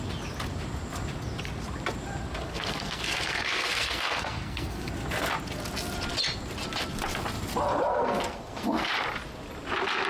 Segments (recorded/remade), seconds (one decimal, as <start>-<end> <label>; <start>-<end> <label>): 0.0-2.5 recorded; 2.5-4.9 remade; 4.9-7.9 recorded; 7.9-8.9 remade; 8.9-10.1 recorded